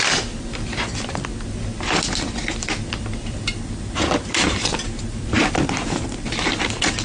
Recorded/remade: remade